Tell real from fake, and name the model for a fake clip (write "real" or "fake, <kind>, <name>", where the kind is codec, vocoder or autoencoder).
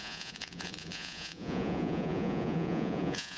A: fake, vocoder, Vocos